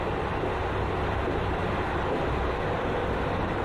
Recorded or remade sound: recorded